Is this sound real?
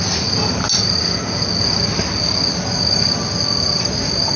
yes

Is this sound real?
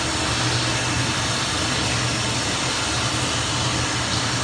yes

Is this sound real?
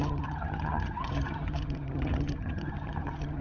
no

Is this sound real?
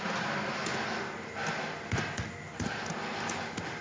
yes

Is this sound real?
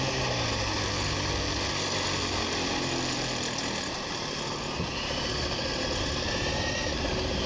yes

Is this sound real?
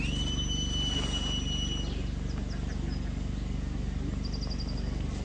yes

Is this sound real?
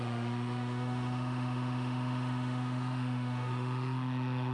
no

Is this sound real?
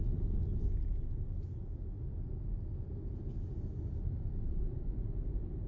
yes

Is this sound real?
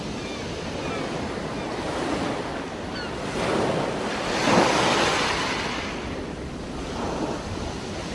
yes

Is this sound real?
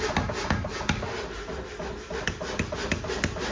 yes